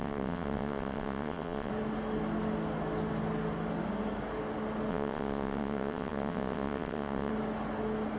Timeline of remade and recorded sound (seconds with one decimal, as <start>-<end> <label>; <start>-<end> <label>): 0.0-1.7 remade; 1.7-4.9 recorded; 4.9-7.3 remade; 7.3-8.2 recorded